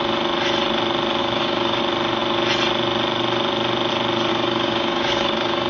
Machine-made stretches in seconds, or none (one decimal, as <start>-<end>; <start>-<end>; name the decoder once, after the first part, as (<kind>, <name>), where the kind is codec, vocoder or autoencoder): 1.2-1.8 (codec, DAC); 4.3-5.7